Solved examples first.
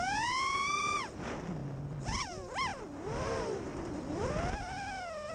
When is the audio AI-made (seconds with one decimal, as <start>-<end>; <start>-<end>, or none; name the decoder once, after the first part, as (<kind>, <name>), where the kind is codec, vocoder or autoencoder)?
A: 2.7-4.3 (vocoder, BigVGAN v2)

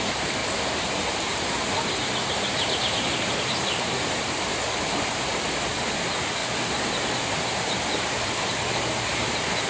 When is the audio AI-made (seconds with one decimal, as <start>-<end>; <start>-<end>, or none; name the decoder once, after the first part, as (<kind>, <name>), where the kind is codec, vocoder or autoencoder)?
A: 0.0-0.4 (vocoder, BigVGAN v2); 0.9-6.4; 7.3-9.7

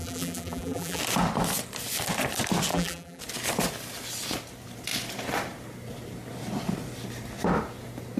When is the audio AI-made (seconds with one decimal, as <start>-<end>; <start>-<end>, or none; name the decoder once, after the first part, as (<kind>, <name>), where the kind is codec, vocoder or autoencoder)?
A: 0.0-1.0 (vocoder, BigVGAN v2); 2.7-3.2

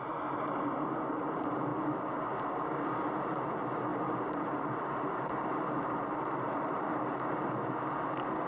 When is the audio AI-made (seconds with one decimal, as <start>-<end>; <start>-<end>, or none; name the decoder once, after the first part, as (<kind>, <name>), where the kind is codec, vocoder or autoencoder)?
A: 0.0-1.7 (vocoder, BigVGAN v2); 2.4-8.5